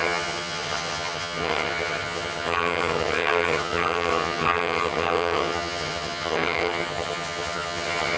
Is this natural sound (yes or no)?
no